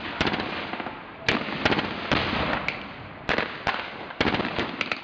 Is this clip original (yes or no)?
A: yes